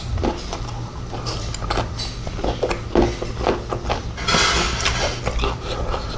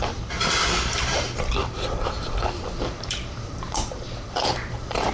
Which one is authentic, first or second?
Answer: first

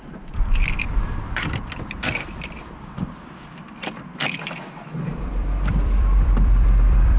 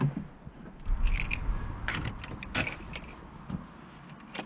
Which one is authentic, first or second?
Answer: second